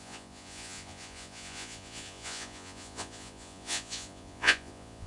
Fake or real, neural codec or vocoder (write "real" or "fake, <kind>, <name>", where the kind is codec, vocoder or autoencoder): fake, vocoder, Vocos